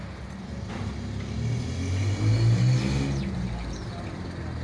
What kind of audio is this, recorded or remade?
recorded